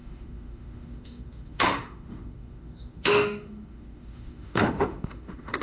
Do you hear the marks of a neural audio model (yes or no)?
yes